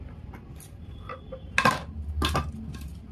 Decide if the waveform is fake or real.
real